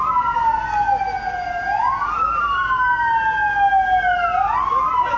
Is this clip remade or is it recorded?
recorded